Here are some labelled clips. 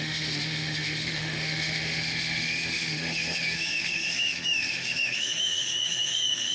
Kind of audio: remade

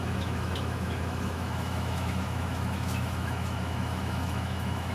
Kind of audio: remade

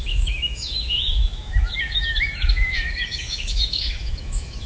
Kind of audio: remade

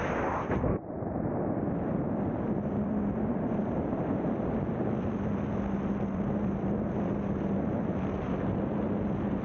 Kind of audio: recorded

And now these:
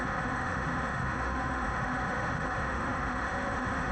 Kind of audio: remade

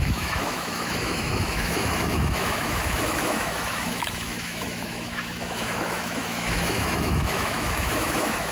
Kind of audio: remade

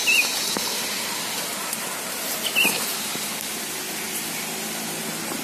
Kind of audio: recorded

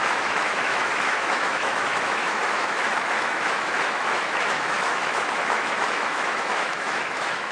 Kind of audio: remade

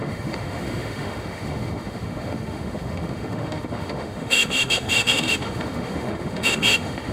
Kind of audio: remade